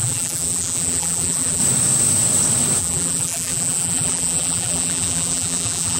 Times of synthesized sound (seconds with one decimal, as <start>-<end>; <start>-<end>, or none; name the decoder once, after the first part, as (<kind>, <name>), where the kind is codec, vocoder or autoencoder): 0.0-1.6 (vocoder, BigVGAN v2); 2.8-6.0